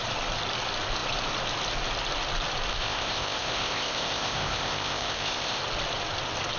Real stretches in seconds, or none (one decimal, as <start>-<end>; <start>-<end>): 0.0-2.7; 5.6-6.6

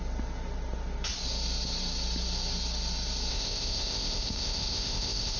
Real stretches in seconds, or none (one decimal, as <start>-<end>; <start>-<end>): 0.0-3.3

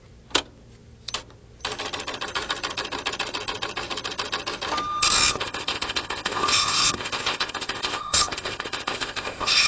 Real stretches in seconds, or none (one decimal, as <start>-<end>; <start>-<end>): 0.0-5.3

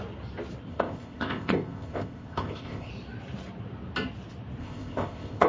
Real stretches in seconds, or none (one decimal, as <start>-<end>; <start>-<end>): 0.0-0.7; 2.9-4.6

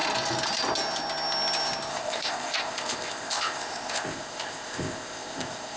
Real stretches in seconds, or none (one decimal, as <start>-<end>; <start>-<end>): 0.0-1.9

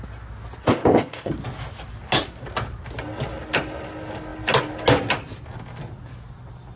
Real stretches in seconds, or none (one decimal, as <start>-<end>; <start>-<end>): 0.0-0.6; 1.3-6.8